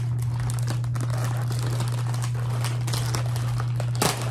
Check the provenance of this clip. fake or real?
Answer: real